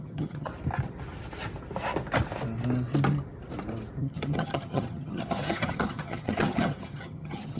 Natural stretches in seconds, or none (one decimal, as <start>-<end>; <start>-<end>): 0.5-4.0